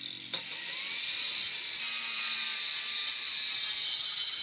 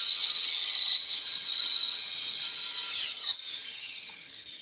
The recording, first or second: first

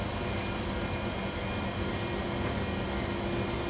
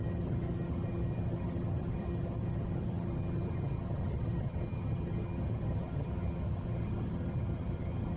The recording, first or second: first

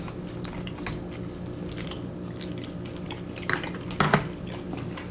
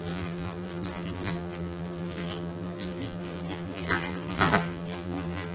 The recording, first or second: first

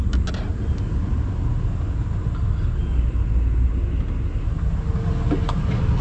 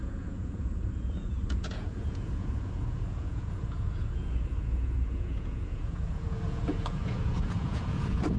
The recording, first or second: first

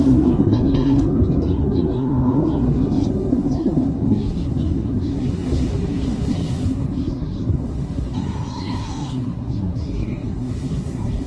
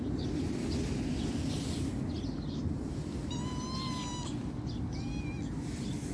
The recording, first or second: second